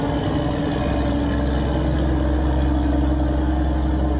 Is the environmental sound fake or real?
real